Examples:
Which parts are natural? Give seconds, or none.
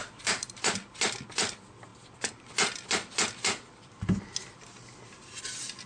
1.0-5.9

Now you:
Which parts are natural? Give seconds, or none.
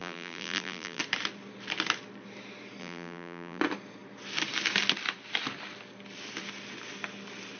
1.0-2.8; 3.6-7.6